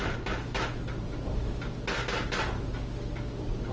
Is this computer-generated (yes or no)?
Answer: no